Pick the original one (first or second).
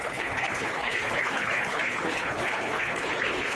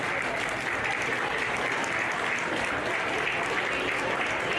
second